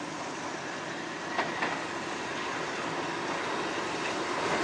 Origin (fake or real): real